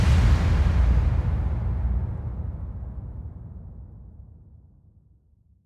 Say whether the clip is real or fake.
real